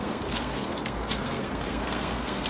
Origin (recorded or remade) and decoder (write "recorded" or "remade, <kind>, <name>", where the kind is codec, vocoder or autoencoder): remade, codec, SNAC